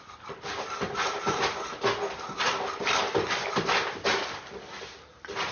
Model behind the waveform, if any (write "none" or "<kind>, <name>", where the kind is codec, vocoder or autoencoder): none